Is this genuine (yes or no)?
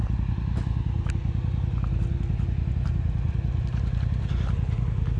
yes